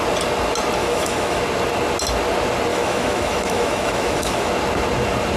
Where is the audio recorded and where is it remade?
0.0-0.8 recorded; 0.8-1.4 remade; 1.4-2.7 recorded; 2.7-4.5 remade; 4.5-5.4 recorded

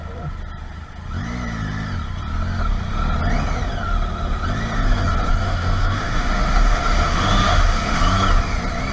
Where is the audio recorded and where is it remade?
0.0-5.4 recorded; 5.4-8.0 remade; 8.0-8.9 recorded

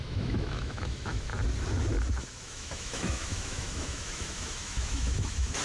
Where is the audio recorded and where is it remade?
0.0-1.3 remade; 1.3-2.2 recorded; 2.2-5.6 remade

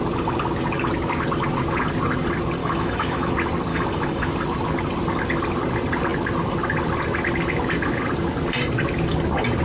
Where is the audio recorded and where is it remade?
0.0-2.6 recorded; 2.6-3.3 remade; 3.3-3.7 recorded; 3.7-4.3 remade; 4.3-9.6 recorded

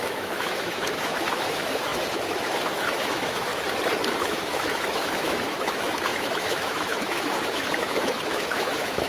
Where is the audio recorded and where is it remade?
0.0-3.5 remade; 3.5-4.2 recorded; 4.2-9.1 remade

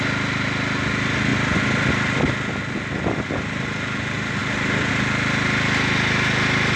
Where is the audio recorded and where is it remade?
0.0-6.8 recorded

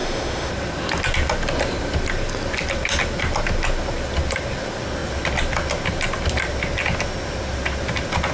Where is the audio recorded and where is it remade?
0.0-0.5 remade; 0.5-8.3 recorded

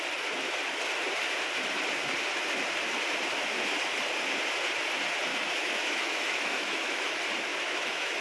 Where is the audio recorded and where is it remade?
0.0-5.3 recorded; 5.3-7.1 remade; 7.1-7.5 recorded; 7.5-8.2 remade